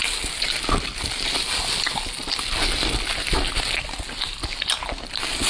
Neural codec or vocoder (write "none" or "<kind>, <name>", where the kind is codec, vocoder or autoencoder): none